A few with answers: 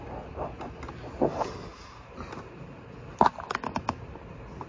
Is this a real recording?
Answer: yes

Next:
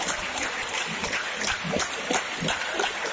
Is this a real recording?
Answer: yes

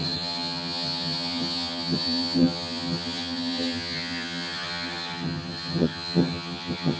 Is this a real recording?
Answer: no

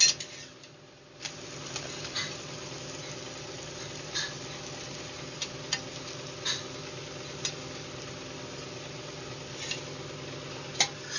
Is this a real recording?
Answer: yes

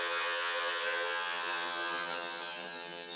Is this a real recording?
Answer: no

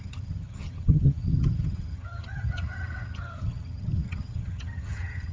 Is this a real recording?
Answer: no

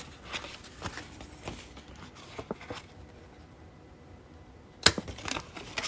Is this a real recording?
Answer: yes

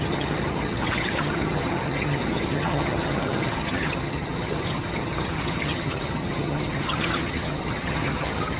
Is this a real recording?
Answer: no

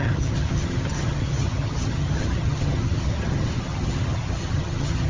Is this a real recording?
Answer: no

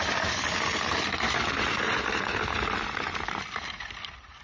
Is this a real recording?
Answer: yes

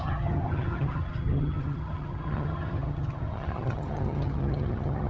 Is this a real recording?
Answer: no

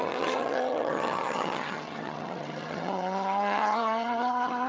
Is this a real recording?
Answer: no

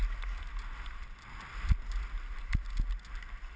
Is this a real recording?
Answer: yes